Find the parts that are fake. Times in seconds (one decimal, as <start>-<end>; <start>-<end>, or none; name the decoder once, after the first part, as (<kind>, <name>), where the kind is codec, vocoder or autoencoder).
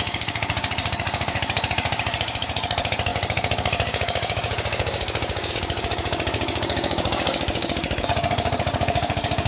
0.0-9.5 (codec, DAC)